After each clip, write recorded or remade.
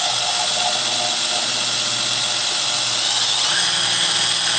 recorded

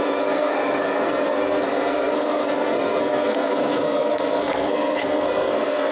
remade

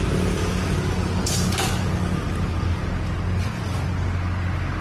recorded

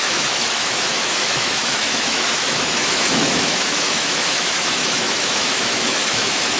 remade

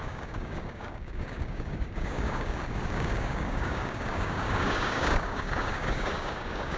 remade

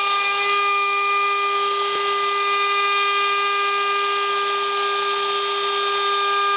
recorded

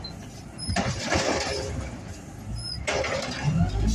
recorded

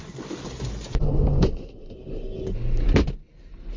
recorded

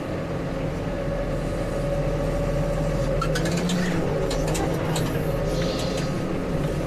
recorded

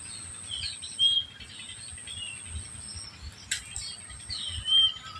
recorded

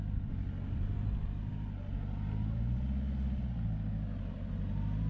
recorded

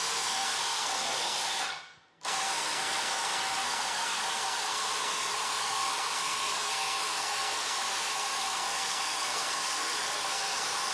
remade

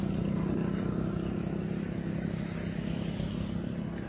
recorded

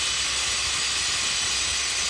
recorded